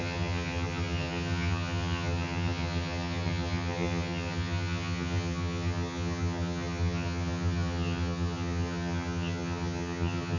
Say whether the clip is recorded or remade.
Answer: remade